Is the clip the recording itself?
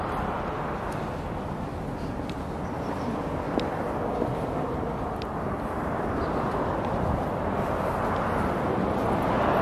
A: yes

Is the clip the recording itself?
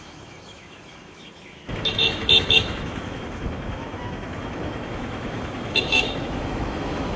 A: no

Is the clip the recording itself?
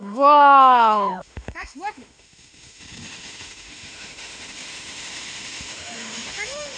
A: no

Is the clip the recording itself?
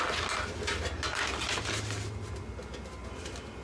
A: yes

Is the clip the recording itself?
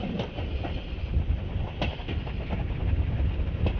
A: yes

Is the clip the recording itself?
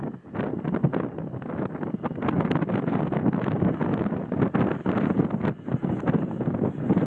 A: yes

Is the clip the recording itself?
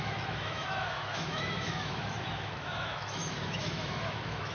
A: no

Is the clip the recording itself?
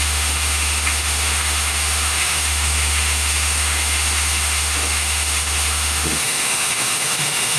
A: no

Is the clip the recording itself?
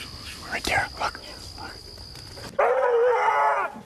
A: yes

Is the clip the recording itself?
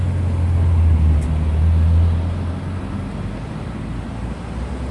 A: yes